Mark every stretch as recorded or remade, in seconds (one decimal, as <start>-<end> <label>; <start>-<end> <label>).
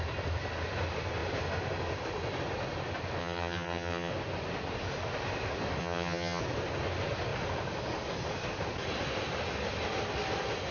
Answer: 0.0-3.2 recorded; 3.2-4.1 remade; 4.1-5.8 recorded; 5.8-6.4 remade; 6.4-10.7 recorded